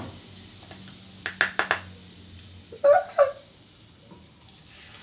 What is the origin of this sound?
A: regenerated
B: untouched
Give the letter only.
B